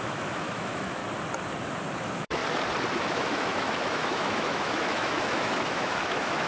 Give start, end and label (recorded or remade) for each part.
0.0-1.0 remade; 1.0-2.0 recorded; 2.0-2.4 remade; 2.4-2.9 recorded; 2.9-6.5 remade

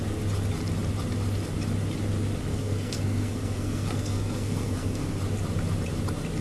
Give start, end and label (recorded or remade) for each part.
0.0-2.5 recorded; 2.5-5.2 remade; 5.2-6.4 recorded

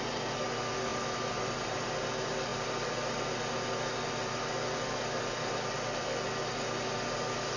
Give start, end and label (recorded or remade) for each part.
0.0-7.6 recorded

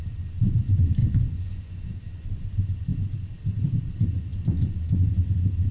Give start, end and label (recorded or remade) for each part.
0.0-1.0 recorded; 1.0-1.9 remade; 1.9-5.7 recorded

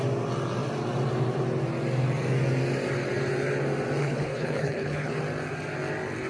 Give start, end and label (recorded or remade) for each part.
0.0-4.0 recorded; 4.0-5.2 remade; 5.2-6.3 recorded

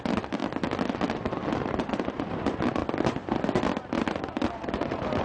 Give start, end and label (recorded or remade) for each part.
0.0-0.4 remade; 0.4-1.5 recorded; 1.5-2.8 remade; 2.8-3.9 recorded; 3.9-5.2 remade

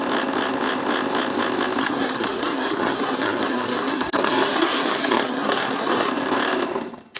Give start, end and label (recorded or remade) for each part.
0.0-1.8 recorded; 1.8-6.1 remade; 6.1-7.2 recorded

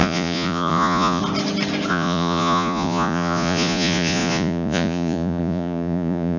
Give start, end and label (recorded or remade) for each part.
0.0-1.2 remade; 1.2-1.9 recorded; 1.9-6.4 remade